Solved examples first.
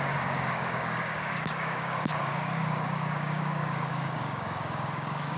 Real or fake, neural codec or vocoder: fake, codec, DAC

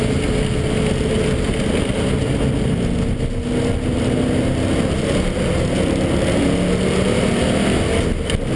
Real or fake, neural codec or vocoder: real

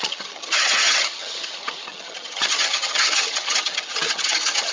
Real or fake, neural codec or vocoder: fake, vocoder, HiFi-GAN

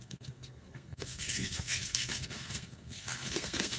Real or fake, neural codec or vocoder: fake, codec, SNAC